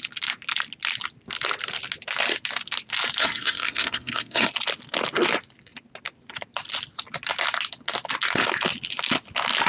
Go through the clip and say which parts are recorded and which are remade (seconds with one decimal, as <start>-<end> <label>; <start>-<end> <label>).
0.0-3.2 recorded; 3.2-4.5 remade; 4.5-9.7 recorded